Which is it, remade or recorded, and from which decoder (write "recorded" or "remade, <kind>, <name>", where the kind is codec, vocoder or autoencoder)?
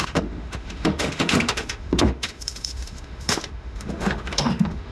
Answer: remade, autoencoder, DAC-VAE